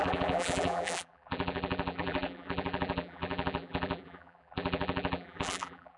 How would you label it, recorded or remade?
remade